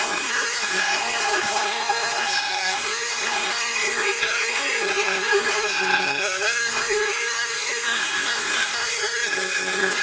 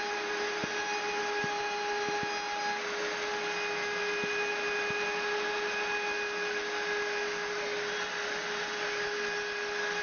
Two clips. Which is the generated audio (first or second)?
first